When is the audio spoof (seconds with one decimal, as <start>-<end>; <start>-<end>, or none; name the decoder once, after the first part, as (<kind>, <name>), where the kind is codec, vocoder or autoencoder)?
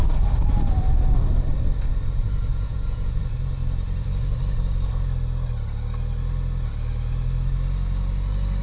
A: 2.5-3.2 (vocoder, Vocos)